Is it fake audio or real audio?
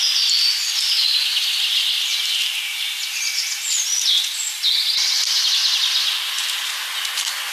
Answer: real